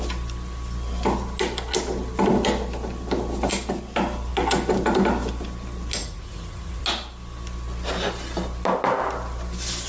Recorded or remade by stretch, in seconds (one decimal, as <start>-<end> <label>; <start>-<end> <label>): 0.0-6.0 recorded; 6.0-6.8 remade; 6.8-9.9 recorded